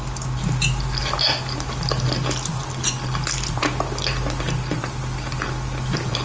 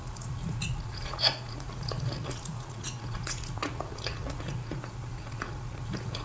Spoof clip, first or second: second